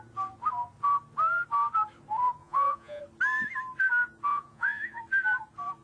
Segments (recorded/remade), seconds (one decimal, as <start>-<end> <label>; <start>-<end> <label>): 0.0-2.4 recorded; 2.4-3.0 remade; 3.0-4.3 recorded; 4.3-5.0 remade; 5.0-5.8 recorded